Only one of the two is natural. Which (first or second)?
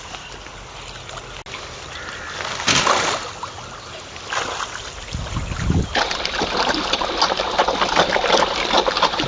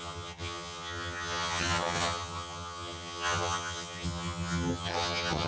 first